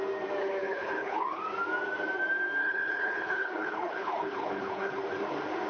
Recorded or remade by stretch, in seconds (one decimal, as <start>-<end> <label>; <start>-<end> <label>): 0.0-0.4 recorded; 0.4-1.4 remade; 1.4-2.6 recorded; 2.6-5.0 remade; 5.0-5.7 recorded